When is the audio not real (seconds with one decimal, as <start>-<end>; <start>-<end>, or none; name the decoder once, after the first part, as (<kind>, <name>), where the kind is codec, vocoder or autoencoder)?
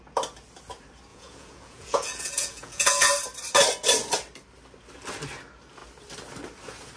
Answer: 1.1-3.1 (vocoder, Vocos)